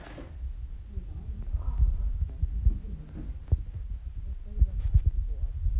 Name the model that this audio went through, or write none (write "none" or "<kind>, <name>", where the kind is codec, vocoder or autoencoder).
none